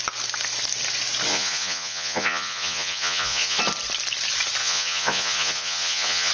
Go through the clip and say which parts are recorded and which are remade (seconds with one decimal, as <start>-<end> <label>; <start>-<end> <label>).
0.0-1.3 recorded; 1.3-3.6 remade; 3.6-4.6 recorded; 4.6-6.3 remade